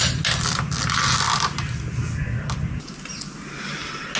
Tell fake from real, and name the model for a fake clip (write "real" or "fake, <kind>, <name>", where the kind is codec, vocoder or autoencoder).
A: real